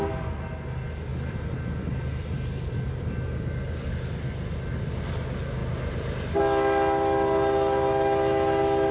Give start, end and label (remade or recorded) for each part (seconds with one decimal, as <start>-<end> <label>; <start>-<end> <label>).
0.0-5.6 recorded; 5.6-6.4 remade; 6.4-8.9 recorded

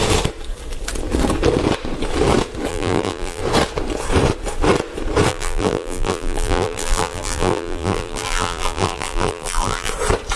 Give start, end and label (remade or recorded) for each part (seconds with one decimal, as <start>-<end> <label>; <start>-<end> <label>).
0.0-2.7 recorded; 2.7-3.4 remade; 3.4-5.3 recorded; 5.3-9.9 remade; 9.9-10.4 recorded

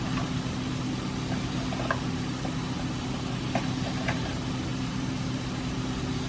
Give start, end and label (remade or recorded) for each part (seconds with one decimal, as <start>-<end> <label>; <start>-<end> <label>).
0.0-4.7 recorded; 4.7-5.5 remade; 5.5-6.3 recorded